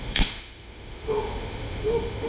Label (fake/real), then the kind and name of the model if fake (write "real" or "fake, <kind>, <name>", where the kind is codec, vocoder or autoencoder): fake, autoencoder, DAC-VAE